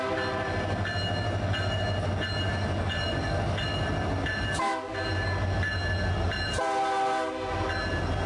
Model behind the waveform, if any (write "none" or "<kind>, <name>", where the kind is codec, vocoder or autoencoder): none